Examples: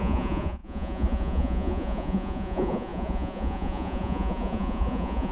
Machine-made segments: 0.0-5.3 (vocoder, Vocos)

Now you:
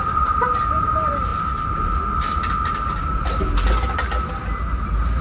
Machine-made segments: none